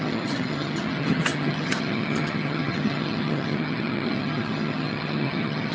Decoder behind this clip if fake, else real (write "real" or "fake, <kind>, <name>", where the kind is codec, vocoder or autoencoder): fake, vocoder, HiFi-GAN